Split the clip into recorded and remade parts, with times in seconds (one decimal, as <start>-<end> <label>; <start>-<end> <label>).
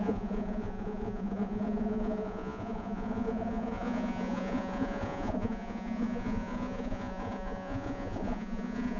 0.0-9.0 remade